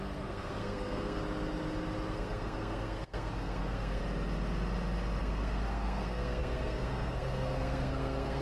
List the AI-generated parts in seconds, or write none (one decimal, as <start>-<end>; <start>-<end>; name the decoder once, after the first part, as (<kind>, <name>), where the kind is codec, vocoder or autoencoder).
0.0-1.2 (codec, SNAC); 2.1-4.0; 5.2-8.4

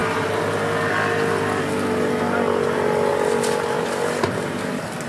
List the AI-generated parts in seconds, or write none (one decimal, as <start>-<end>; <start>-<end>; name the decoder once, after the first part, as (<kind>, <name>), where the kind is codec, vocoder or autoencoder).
none

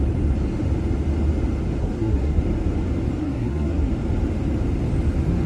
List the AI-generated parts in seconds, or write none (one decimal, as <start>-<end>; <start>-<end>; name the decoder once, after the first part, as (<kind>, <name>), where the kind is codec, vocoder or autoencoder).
1.8-2.4 (codec, SNAC); 3.2-3.9

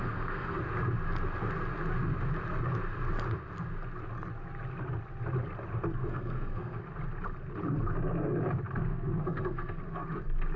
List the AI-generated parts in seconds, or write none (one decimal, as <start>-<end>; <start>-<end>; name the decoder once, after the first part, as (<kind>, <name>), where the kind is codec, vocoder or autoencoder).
0.0-0.6 (codec, SNAC); 6.0-6.8; 8.9-9.8